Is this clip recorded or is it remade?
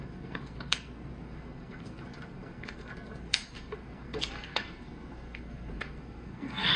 remade